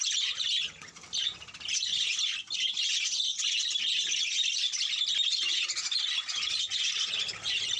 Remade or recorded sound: recorded